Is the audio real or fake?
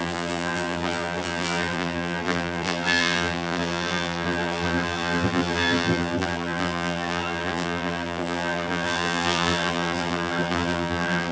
fake